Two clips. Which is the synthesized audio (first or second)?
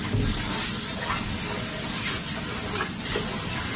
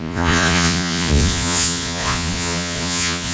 second